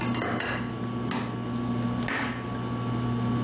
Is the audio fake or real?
real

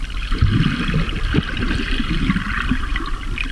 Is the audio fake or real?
real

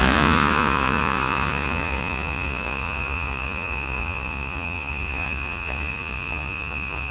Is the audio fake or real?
fake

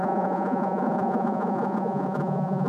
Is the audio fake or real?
fake